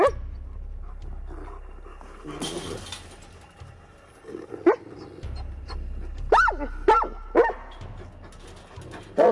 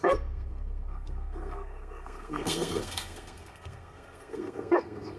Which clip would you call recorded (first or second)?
first